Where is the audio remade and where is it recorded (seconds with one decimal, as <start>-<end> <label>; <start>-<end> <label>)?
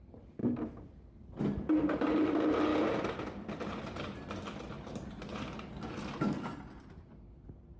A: 0.0-7.8 recorded